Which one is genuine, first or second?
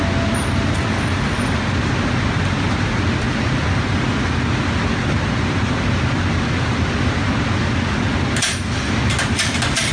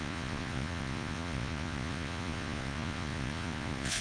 first